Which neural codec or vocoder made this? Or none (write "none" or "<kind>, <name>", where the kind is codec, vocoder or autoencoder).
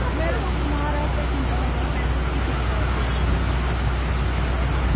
none